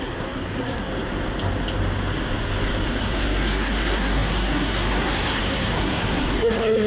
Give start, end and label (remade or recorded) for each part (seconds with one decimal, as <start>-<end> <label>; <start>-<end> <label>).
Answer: 0.0-0.9 remade; 0.9-3.0 recorded; 3.0-6.9 remade